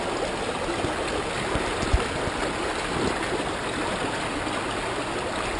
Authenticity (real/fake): real